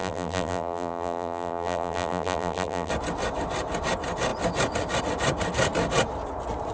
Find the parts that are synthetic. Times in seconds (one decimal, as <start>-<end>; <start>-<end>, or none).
0.0-2.9